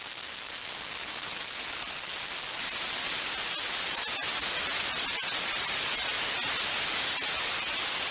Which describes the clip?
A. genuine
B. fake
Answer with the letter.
A